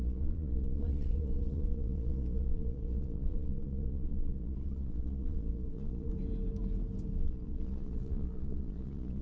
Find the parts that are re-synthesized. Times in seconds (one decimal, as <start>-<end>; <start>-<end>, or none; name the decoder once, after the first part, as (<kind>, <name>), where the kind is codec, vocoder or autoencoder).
0.0-6.1 (vocoder, Vocos); 7.2-9.2